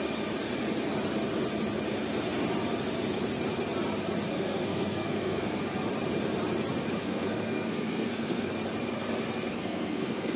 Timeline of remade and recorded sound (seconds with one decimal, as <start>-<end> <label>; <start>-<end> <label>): 0.0-4.3 recorded; 4.3-5.6 remade; 5.6-7.0 recorded; 7.0-8.5 remade; 8.5-9.5 recorded; 9.5-10.4 remade